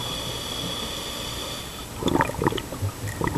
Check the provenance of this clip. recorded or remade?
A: recorded